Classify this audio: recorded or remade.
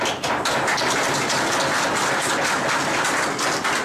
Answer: recorded